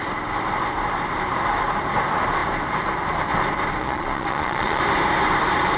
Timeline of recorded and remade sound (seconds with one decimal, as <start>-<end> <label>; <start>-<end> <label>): 0.0-3.8 recorded; 3.8-4.8 remade; 4.8-5.8 recorded